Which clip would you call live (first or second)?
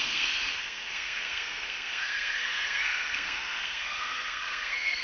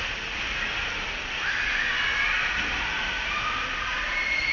second